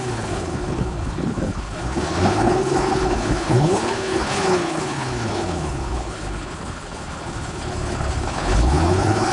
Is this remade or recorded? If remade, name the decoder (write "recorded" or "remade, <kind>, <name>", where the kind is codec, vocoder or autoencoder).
remade, codec, HILCodec